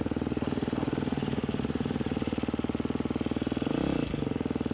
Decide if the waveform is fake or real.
real